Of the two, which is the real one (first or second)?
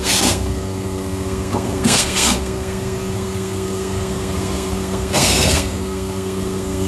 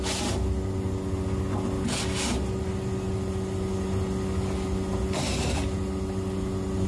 second